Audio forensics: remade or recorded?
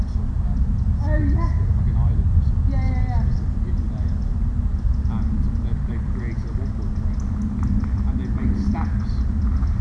recorded